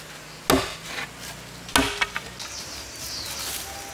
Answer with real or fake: real